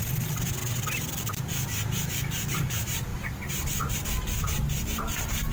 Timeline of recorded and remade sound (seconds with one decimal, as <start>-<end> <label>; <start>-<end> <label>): 0.0-5.5 recorded